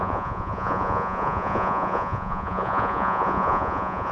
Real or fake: fake